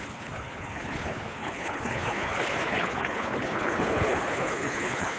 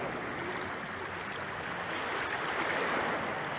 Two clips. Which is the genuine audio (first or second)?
second